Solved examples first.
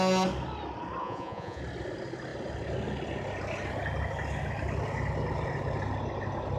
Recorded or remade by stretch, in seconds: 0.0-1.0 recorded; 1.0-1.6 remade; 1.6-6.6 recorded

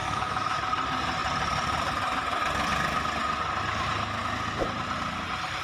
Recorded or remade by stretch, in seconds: 0.0-0.6 remade; 0.6-5.6 recorded

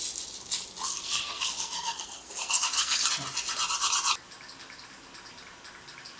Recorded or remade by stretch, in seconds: 0.0-0.9 recorded; 0.9-3.1 remade; 3.1-6.2 recorded

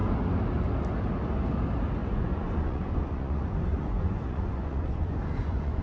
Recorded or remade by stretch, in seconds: 0.0-2.0 recorded; 2.0-5.8 remade

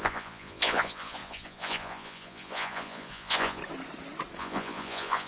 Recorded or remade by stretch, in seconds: 0.0-3.6 remade; 3.6-4.4 recorded; 4.4-5.3 remade